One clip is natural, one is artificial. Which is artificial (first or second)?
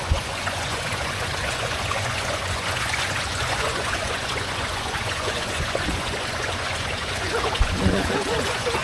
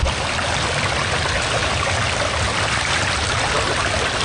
first